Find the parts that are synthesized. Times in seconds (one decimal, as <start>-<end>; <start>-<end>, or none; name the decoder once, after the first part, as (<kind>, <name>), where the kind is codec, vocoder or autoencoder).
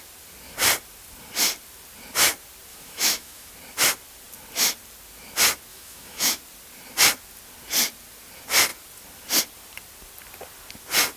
2.7-3.5 (autoencoder, DAC-VAE); 5.7-6.4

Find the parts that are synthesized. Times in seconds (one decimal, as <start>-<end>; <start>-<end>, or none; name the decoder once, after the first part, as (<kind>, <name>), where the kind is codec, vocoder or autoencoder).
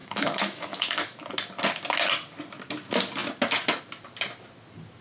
0.0-1.3 (autoencoder, DAC-VAE)